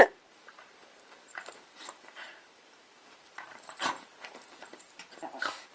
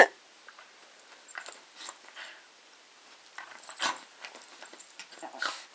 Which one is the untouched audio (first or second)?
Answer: second